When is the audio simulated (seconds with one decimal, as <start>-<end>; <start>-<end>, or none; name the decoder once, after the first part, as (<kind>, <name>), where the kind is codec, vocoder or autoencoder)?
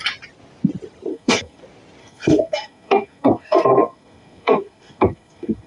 1.1-1.6 (codec, SNAC); 2.0-5.7